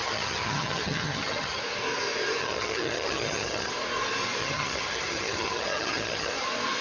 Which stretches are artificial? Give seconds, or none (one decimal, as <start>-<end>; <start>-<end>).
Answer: 0.0-1.6; 2.4-3.7; 4.4-6.3